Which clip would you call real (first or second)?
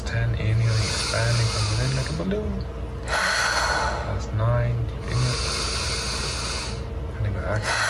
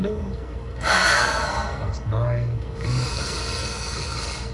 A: first